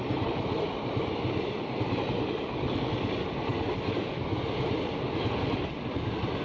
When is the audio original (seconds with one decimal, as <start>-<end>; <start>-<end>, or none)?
0.0-6.4